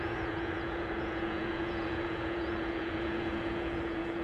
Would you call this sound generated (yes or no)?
yes